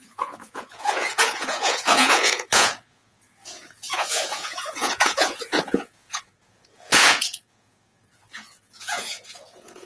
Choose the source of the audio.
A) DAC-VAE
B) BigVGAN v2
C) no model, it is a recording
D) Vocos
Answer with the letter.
D